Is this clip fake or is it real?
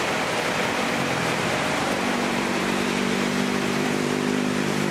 fake